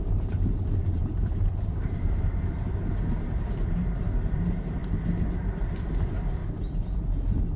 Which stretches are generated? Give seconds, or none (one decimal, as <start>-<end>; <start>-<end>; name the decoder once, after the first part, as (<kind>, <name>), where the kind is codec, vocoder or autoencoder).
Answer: 0.0-4.8 (vocoder, BigVGAN v2); 5.4-7.6